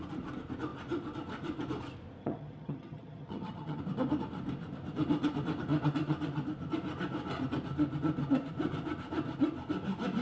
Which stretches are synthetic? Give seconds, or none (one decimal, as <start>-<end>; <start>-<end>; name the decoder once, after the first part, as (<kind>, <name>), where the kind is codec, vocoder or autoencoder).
2.2-3.8 (vocoder, HiFi-GAN)